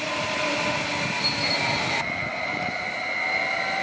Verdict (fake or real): real